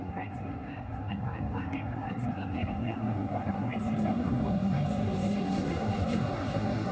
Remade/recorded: remade